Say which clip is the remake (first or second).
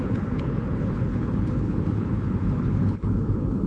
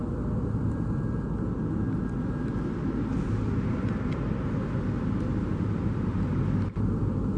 first